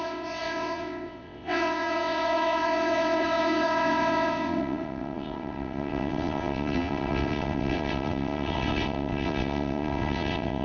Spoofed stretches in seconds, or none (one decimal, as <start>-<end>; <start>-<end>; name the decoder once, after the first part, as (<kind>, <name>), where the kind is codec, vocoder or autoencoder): 0.0-10.6 (vocoder, WaveNeXt)